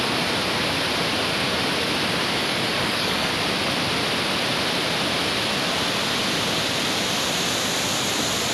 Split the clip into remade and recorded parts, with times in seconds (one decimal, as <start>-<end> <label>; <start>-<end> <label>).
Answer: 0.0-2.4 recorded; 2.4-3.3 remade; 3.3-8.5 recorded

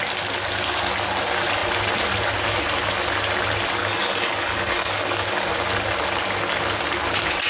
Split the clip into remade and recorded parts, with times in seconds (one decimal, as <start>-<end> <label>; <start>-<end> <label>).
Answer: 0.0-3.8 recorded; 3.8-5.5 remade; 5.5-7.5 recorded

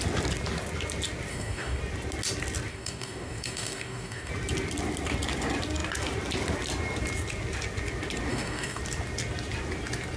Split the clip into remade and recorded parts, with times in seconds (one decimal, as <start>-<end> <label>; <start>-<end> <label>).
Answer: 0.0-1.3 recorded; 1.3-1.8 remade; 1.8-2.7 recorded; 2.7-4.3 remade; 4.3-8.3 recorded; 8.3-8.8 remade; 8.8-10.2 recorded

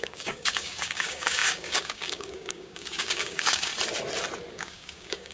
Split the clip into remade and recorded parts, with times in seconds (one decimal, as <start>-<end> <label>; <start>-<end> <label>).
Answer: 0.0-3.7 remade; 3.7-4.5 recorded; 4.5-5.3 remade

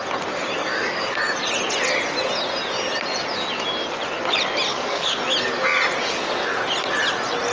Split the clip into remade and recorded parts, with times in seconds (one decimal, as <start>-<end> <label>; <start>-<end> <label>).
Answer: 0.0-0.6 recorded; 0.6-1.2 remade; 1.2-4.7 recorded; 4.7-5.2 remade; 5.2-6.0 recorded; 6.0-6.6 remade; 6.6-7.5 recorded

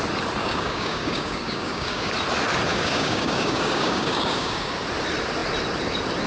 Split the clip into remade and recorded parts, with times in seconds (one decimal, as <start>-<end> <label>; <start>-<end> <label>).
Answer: 0.0-0.4 recorded; 0.4-2.1 remade; 2.1-2.7 recorded; 2.7-4.7 remade; 4.7-6.3 recorded